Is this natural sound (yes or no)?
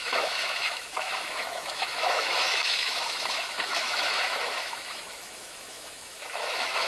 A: no